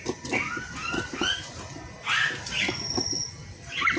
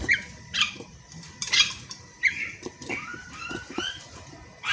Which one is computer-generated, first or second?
second